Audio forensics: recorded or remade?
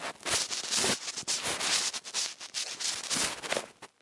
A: recorded